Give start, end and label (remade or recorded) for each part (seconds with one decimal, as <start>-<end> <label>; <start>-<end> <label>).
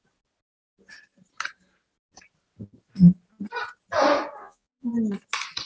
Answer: 0.0-4.4 recorded; 4.4-4.9 remade; 4.9-5.7 recorded